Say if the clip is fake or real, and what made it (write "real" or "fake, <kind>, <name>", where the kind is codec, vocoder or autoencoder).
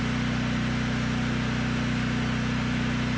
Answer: real